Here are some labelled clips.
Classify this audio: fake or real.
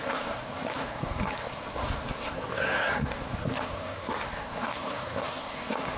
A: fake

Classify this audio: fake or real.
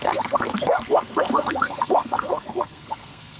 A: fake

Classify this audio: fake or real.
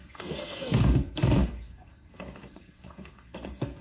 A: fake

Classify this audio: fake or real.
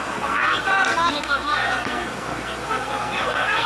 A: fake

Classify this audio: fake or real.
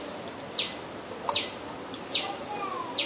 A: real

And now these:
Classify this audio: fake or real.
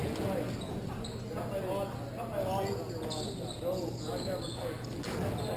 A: real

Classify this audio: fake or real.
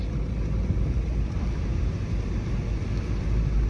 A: real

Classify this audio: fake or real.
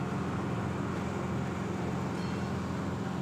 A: real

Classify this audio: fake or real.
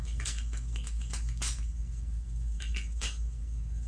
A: fake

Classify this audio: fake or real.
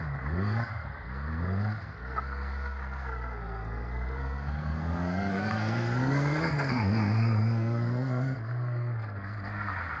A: fake